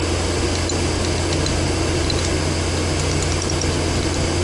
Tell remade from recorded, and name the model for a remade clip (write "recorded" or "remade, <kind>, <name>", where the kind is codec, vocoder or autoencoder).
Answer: recorded